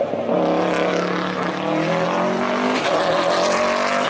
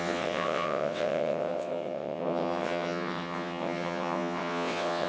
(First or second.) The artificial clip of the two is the second